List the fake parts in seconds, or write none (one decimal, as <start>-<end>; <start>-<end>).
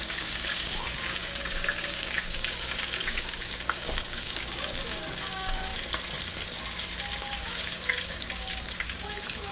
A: 0.0-5.7; 7.2-9.5